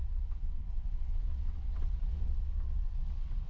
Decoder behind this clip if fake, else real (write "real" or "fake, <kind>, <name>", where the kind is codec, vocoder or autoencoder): fake, vocoder, WaveNeXt